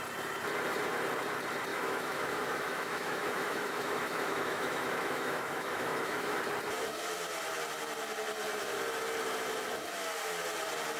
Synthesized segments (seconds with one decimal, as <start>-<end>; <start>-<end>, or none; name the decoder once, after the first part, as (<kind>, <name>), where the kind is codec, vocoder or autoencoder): 1.7-6.4 (autoencoder, DAC-VAE)